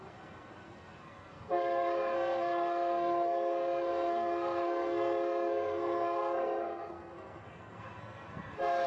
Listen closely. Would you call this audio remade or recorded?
remade